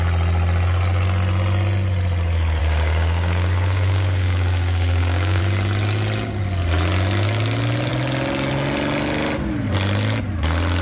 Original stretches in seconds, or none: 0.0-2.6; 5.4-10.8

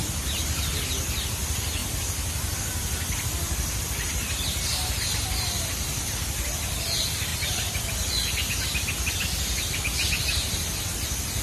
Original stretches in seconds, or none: 1.8-3.8; 7.3-9.7

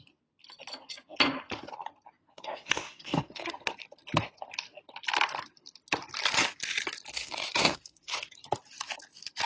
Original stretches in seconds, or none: 0.0-2.2; 3.5-7.1; 8.3-9.5

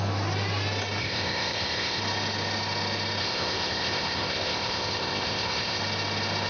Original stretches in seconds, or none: 0.0-1.0; 2.0-3.2; 5.8-6.5

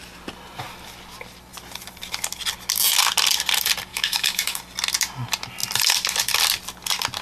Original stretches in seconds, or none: 0.0-3.9; 4.6-7.2

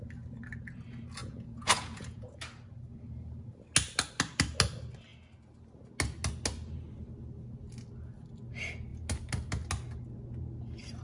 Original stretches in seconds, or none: 0.0-1.2; 2.4-11.0

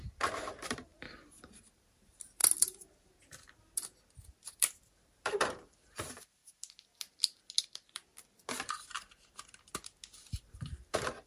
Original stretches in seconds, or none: 2.4-4.3; 6.4-10.3

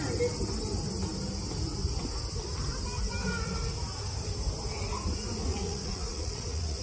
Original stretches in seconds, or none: 0.0-5.5